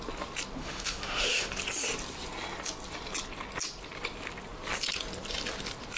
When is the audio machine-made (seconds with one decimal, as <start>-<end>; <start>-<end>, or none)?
0.6-1.5